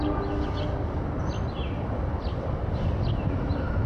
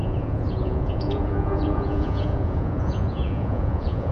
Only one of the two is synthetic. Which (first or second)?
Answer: second